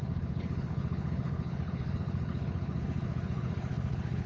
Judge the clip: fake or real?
fake